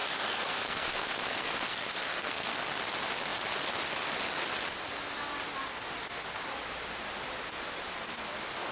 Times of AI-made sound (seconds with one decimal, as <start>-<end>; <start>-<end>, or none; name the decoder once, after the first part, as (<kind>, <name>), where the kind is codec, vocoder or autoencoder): 0.0-2.6 (codec, SNAC)